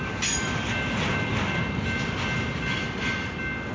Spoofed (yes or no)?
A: no